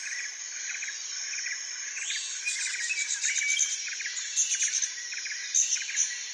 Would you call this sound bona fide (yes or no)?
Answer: yes